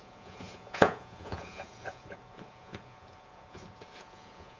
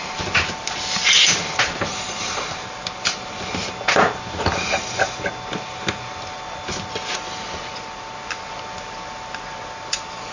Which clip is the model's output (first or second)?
first